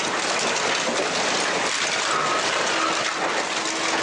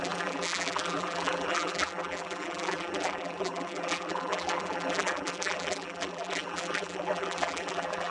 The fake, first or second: second